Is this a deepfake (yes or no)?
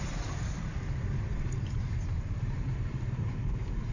yes